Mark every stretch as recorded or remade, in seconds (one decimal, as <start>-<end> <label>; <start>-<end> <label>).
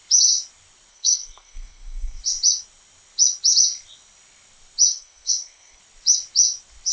0.0-0.9 recorded; 0.9-2.2 remade; 2.2-4.9 recorded; 4.9-5.8 remade; 5.8-6.9 recorded